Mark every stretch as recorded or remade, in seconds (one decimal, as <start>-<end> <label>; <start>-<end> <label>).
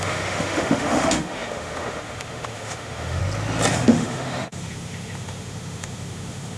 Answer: 0.0-3.2 remade; 3.2-3.7 recorded; 3.7-6.6 remade